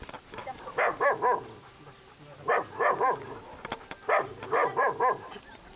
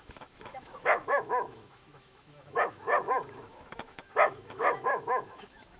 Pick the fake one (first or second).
second